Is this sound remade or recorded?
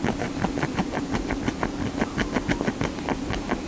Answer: recorded